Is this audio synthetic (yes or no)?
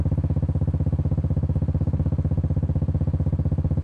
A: no